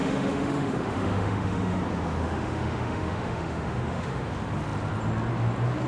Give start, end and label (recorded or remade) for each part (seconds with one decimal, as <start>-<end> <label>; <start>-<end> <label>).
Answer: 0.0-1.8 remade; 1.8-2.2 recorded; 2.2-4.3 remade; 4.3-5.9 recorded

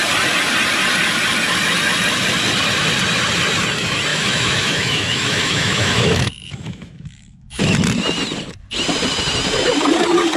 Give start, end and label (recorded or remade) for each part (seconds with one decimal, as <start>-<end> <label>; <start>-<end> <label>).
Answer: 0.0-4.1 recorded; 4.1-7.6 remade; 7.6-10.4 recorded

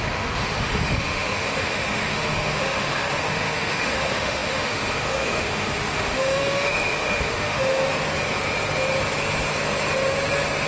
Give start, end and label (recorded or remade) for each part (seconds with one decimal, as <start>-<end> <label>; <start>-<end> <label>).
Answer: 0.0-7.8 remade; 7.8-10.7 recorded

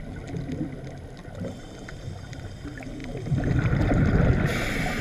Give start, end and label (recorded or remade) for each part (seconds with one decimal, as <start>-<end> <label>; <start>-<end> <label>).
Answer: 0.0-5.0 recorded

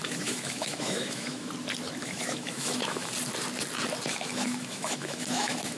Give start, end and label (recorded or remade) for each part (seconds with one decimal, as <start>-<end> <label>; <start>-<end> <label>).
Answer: 0.0-1.5 remade; 1.5-2.0 recorded; 2.0-3.1 remade; 3.1-4.1 recorded; 4.1-5.8 remade

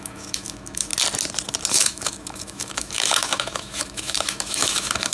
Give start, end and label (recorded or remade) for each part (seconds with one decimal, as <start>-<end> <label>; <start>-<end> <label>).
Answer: 0.0-0.9 remade; 0.9-1.7 recorded; 1.7-5.1 remade

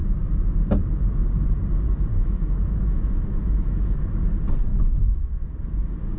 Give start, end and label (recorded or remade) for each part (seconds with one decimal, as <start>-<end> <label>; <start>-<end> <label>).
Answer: 0.0-2.1 recorded; 2.1-4.1 remade; 4.1-4.7 recorded; 4.7-5.5 remade; 5.5-6.2 recorded